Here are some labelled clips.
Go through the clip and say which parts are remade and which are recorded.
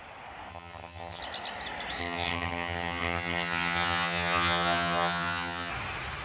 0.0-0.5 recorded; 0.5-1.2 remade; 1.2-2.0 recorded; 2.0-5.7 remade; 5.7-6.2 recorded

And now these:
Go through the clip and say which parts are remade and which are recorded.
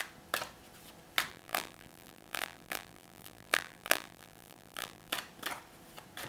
0.0-1.3 recorded; 1.3-5.1 remade; 5.1-6.3 recorded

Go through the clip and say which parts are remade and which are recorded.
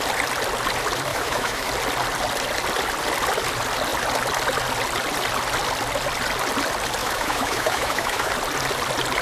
0.0-1.1 recorded; 1.1-1.7 remade; 1.7-7.0 recorded; 7.0-8.3 remade; 8.3-9.2 recorded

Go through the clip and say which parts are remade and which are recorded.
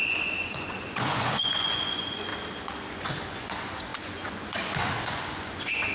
0.0-2.3 remade; 2.3-2.9 recorded; 2.9-5.9 remade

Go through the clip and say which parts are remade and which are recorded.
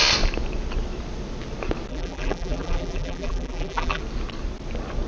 0.0-1.9 recorded; 1.9-4.0 remade; 4.0-5.1 recorded